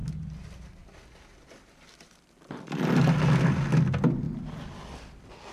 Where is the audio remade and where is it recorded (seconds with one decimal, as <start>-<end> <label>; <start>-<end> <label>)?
0.0-5.5 recorded